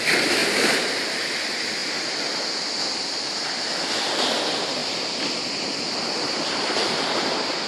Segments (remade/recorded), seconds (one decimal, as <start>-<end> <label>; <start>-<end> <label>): 0.0-7.7 recorded